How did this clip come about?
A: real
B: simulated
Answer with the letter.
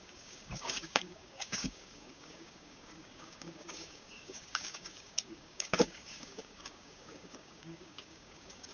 B